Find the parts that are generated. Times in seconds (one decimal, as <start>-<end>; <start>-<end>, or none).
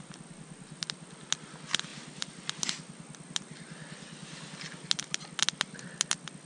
none